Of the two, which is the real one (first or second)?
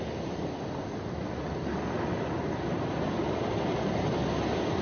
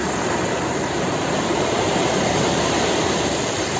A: first